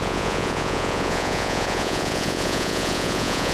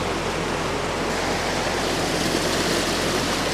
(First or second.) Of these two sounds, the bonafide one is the second